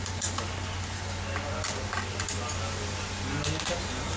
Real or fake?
real